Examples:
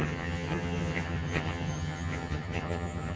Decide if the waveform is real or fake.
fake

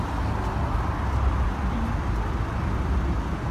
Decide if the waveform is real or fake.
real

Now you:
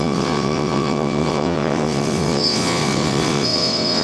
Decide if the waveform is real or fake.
fake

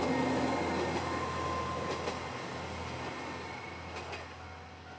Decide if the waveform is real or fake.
real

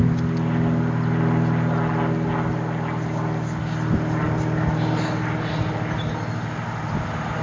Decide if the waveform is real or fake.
real